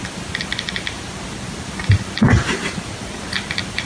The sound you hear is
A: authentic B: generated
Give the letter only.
A